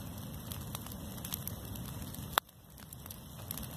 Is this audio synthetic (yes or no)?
no